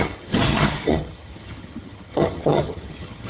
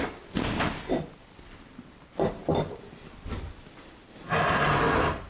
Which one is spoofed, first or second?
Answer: first